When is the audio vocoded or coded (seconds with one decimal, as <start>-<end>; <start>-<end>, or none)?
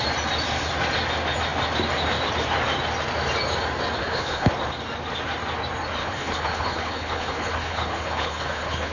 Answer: 4.0-4.5; 6.0-8.9